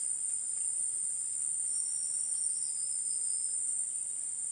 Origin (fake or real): real